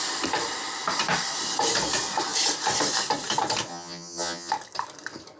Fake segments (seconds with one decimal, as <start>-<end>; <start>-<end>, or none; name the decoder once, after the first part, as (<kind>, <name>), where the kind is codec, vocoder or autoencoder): 3.7-4.5 (vocoder, HiFi-GAN)